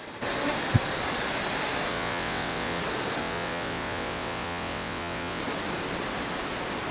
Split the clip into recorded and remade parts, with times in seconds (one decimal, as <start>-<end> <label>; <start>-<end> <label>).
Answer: 0.0-1.9 recorded; 1.9-2.8 remade; 2.8-3.2 recorded; 3.2-5.4 remade; 5.4-6.9 recorded

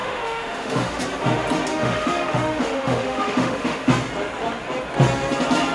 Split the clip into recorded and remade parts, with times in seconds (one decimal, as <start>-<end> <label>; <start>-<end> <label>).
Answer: 0.0-1.0 remade; 1.0-1.7 recorded; 1.7-3.9 remade; 3.9-5.7 recorded

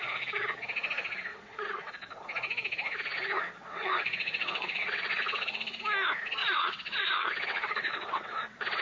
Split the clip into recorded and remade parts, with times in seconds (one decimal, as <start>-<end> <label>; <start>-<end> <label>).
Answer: 0.0-1.3 recorded; 1.3-1.9 remade; 1.9-3.6 recorded; 3.6-5.8 remade; 5.8-6.4 recorded; 6.4-8.8 remade

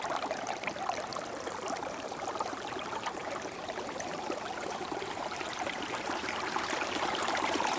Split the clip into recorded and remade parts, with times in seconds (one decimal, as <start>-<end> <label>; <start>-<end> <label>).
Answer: 0.0-1.1 remade; 1.1-1.8 recorded; 1.8-7.8 remade

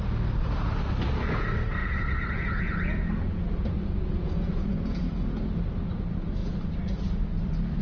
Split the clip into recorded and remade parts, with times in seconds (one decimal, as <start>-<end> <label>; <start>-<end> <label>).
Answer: 0.0-1.8 recorded; 1.8-5.4 remade; 5.4-6.4 recorded; 6.4-7.1 remade; 7.1-7.8 recorded

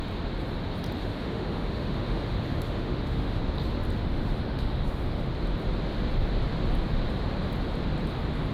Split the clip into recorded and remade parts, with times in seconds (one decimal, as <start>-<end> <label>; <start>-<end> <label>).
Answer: 0.0-1.0 recorded; 1.0-3.4 remade; 3.4-4.0 recorded; 4.0-5.3 remade; 5.3-8.5 recorded

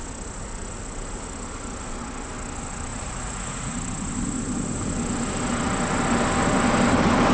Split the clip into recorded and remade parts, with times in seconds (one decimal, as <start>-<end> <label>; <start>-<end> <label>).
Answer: 0.0-2.9 recorded; 2.9-3.7 remade; 3.7-7.3 recorded